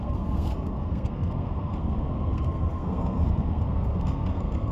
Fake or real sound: fake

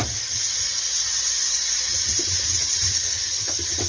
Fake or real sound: real